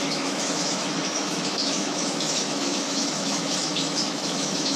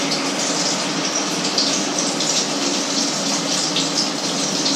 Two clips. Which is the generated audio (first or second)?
first